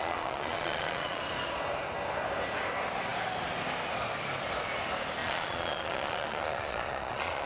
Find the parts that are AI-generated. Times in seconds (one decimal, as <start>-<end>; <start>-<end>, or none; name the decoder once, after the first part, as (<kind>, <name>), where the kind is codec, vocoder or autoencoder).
0.0-1.2 (vocoder, Vocos); 5.2-7.5